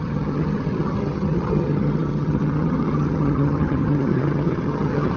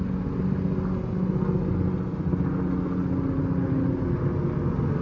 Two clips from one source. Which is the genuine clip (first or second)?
second